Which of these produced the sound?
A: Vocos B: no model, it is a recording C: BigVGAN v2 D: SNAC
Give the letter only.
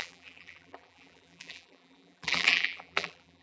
C